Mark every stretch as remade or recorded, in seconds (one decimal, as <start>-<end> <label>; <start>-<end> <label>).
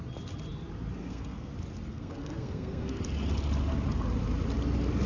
0.0-1.0 recorded; 1.0-1.5 remade; 1.5-1.9 recorded; 1.9-3.0 remade; 3.0-5.1 recorded